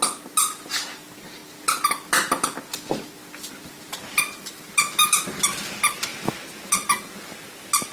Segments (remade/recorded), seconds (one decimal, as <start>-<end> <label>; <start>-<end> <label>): 0.0-7.9 recorded